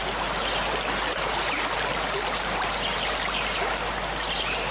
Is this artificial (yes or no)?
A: no